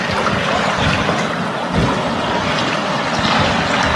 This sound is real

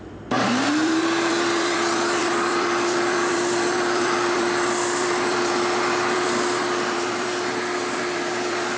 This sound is fake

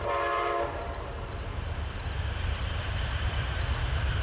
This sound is fake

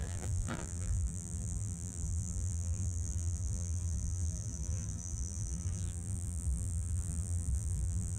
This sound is fake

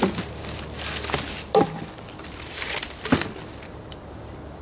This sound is fake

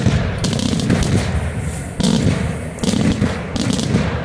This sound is real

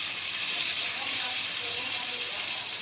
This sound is fake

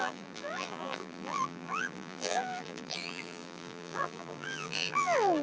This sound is fake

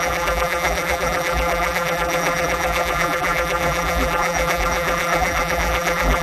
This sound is fake